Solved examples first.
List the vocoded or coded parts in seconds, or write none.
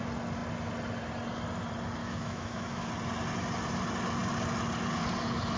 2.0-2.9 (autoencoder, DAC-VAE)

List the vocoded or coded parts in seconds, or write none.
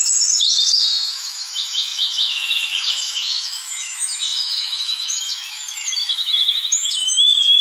0.0-7.6 (autoencoder, DAC-VAE)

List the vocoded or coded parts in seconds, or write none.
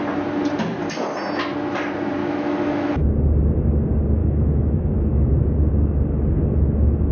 2.2-3.0 (autoencoder, DAC-VAE); 4.2-5.3